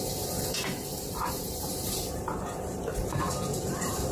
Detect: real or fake fake